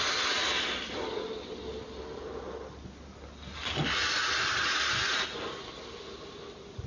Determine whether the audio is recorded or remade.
recorded